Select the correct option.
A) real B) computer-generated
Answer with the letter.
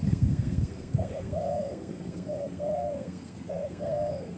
B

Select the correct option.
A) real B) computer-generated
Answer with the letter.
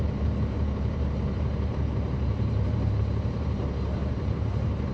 B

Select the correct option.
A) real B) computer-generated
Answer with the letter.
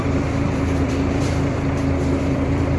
B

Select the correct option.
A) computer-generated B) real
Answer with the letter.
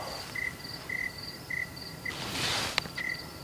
B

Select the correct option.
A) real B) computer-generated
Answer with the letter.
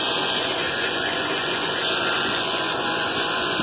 B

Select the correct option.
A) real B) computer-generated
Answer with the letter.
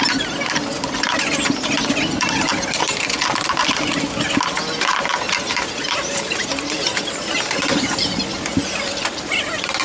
A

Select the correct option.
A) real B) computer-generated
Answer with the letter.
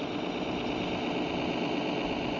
A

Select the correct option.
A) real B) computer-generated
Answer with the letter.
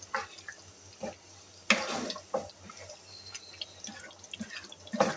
A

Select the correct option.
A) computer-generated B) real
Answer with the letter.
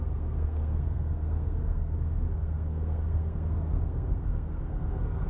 A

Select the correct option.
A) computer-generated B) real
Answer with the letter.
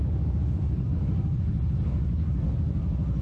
B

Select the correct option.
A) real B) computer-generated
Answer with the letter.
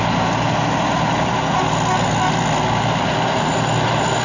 A